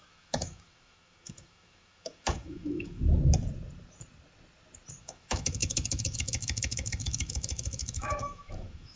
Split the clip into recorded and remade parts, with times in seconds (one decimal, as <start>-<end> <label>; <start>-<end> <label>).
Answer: 0.0-3.0 remade; 3.0-5.0 recorded; 5.0-9.0 remade